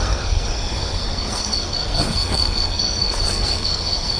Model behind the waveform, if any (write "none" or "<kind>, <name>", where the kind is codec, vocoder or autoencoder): codec, SNAC